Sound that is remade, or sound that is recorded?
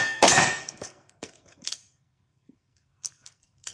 remade